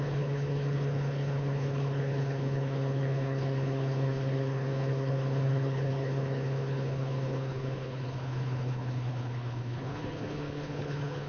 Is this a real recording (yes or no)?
no